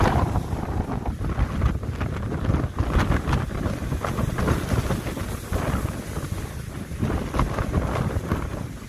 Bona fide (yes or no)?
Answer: yes